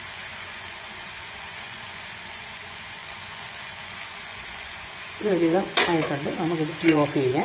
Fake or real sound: fake